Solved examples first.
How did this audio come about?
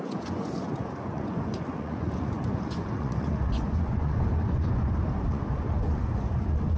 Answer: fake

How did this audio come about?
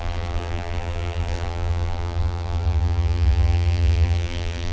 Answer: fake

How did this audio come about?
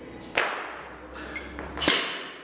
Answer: real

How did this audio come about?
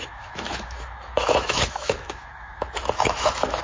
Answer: fake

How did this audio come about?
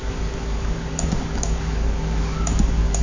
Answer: fake